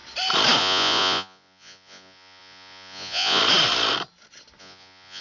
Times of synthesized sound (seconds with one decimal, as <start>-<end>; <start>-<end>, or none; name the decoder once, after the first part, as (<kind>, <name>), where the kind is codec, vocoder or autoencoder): 0.6-3.4 (vocoder, Vocos); 4.6-5.2

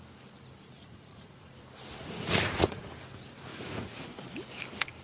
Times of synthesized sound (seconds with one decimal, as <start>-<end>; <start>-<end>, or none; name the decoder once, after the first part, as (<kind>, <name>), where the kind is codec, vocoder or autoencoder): 0.6-1.5 (vocoder, Vocos); 2.0-2.8; 3.5-4.3

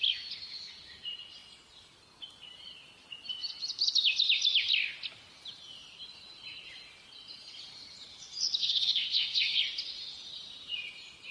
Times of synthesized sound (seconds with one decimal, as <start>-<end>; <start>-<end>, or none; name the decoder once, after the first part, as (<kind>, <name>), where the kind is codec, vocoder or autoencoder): 8.6-9.6 (codec, SNAC)

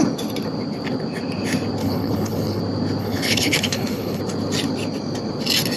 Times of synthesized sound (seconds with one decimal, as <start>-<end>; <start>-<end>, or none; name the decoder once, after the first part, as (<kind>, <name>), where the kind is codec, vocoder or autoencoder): 1.8-2.6 (codec, HILCodec); 3.0-4.2